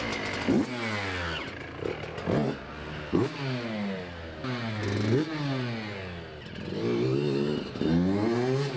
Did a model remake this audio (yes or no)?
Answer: no